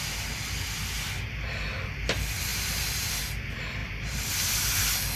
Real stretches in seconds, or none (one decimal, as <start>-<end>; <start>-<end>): 0.0-2.5; 3.1-5.2